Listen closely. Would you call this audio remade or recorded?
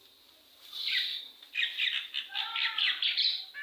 recorded